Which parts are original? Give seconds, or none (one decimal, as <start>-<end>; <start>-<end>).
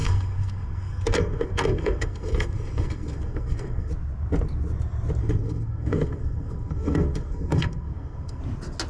3.9-5.2; 8.4-8.9